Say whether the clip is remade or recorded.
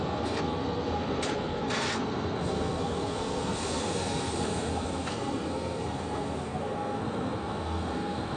remade